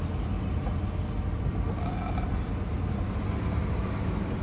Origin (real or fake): real